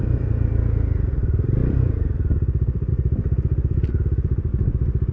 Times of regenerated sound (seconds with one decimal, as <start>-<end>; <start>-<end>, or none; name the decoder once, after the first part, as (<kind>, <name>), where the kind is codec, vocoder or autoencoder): 0.0-0.6 (vocoder, BigVGAN v2); 1.2-4.5